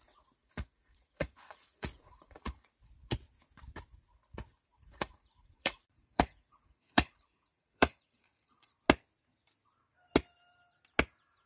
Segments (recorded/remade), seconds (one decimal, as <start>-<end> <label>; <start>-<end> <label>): 0.0-0.4 recorded; 0.4-2.7 remade; 2.7-4.7 recorded; 4.7-8.7 remade; 8.7-11.5 recorded